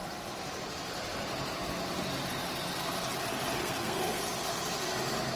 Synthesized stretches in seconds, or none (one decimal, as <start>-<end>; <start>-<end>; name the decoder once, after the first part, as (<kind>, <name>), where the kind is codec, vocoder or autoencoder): 3.6-4.2 (codec, SNAC)